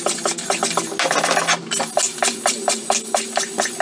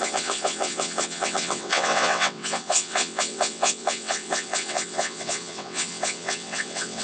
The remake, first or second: second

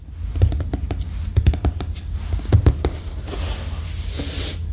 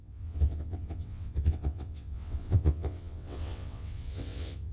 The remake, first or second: second